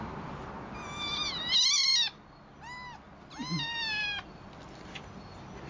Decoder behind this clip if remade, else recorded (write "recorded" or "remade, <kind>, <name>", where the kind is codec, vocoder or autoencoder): recorded